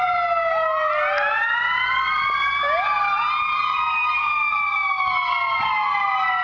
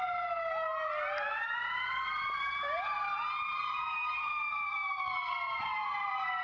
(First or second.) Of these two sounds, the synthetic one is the second